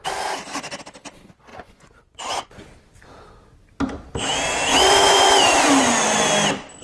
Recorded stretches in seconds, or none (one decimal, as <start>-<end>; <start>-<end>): 0.0-1.5; 2.6-4.7; 5.4-6.8